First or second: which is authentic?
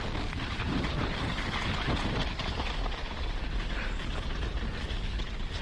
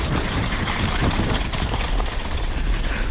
first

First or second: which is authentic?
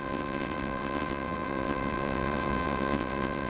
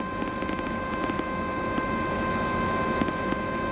second